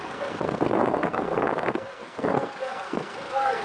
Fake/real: fake